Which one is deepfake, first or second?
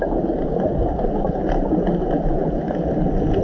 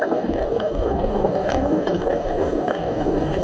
second